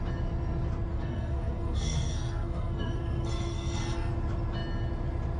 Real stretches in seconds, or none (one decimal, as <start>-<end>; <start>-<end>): 0.0-0.9; 4.1-5.4